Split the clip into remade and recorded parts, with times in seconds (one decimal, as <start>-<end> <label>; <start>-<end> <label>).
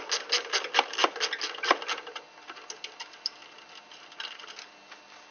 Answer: 0.0-5.3 recorded